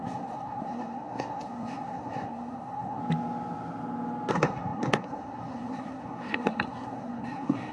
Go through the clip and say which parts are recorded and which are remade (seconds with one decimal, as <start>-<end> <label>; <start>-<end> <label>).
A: 0.0-3.0 remade; 3.0-4.3 recorded; 4.3-7.7 remade

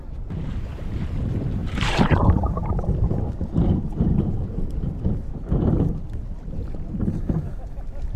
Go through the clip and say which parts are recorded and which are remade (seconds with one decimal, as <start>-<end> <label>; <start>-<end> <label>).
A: 0.0-1.6 recorded; 1.6-2.3 remade; 2.3-8.2 recorded